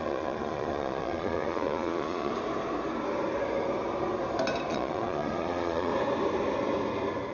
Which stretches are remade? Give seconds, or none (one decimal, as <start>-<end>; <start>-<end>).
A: 0.0-2.3; 4.7-5.9